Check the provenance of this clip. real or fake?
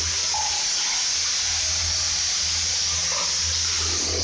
real